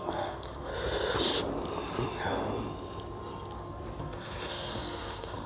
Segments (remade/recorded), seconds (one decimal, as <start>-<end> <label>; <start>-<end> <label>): 0.0-0.7 remade; 0.7-4.0 recorded; 4.0-5.5 remade